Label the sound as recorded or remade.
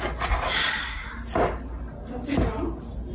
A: recorded